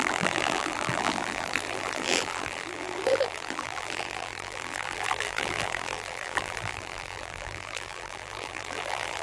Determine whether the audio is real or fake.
fake